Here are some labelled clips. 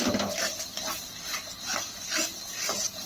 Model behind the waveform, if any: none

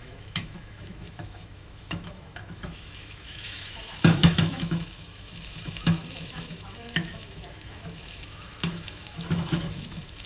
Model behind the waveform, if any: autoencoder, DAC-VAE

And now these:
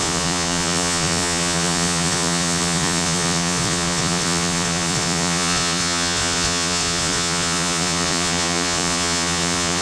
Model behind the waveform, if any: vocoder, Vocos